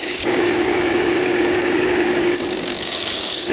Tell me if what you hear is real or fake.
fake